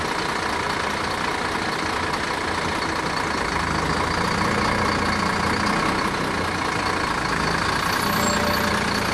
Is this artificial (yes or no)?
no